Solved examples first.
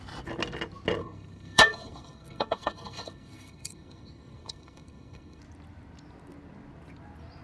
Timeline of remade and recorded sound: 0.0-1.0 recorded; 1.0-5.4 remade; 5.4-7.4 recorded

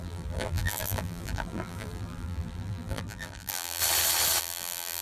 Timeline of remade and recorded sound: 0.0-3.8 remade; 3.8-4.4 recorded; 4.4-5.0 remade

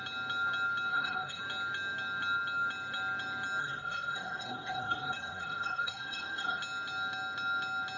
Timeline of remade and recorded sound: 0.0-0.9 recorded; 0.9-1.4 remade; 1.4-3.6 recorded; 3.6-6.6 remade; 6.6-8.0 recorded